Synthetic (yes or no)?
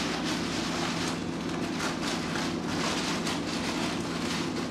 no